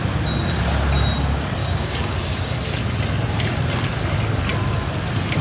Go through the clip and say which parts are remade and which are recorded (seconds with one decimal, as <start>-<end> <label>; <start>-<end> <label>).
0.0-1.6 recorded; 1.6-2.5 remade; 2.5-5.4 recorded